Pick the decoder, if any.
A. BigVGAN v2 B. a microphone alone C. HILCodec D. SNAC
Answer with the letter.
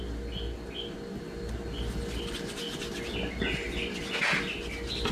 B